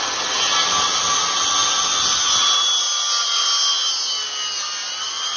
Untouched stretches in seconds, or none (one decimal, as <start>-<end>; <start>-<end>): 0.0-5.4